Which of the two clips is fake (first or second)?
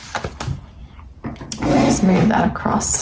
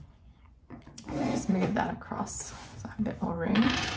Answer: second